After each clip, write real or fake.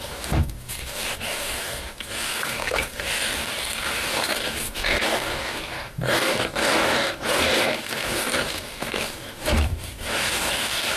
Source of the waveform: fake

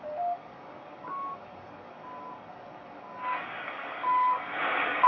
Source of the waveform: fake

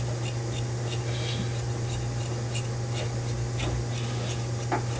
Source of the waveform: real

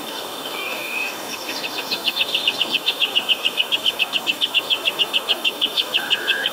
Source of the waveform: fake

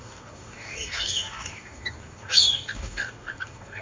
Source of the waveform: fake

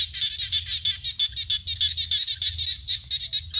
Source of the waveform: real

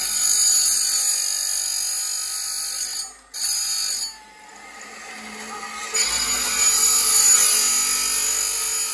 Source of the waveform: real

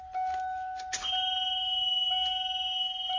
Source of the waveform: real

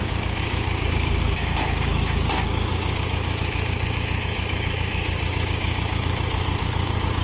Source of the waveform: fake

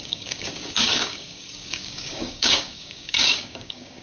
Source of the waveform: fake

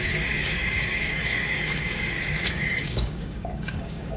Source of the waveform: fake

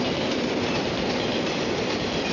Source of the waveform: real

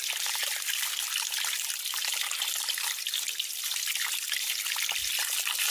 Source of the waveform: real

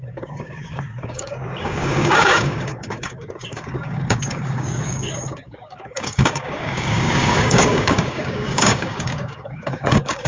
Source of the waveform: fake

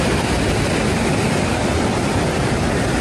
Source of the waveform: real